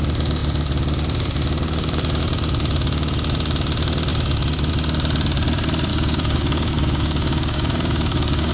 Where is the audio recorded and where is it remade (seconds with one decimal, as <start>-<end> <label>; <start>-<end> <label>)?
0.0-5.9 recorded; 5.9-8.5 remade